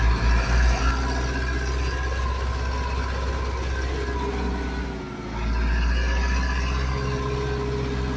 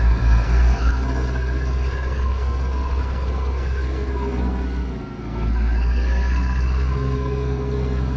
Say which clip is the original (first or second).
first